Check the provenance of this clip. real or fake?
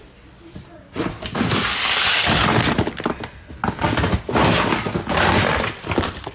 real